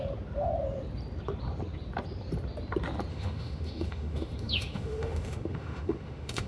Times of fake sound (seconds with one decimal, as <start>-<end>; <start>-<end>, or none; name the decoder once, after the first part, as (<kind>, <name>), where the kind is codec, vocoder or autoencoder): 3.1-6.5 (autoencoder, DAC-VAE)